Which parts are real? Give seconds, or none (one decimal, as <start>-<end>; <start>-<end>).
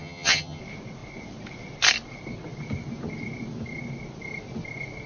0.6-5.1